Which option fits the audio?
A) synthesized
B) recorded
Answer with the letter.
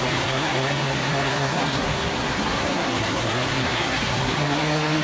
A